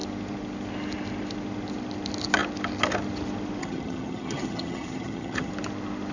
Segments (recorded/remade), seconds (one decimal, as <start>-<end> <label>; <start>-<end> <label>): 0.0-3.6 recorded; 3.6-5.5 remade; 5.5-6.1 recorded